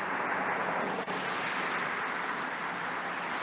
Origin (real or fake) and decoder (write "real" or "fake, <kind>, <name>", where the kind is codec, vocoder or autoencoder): real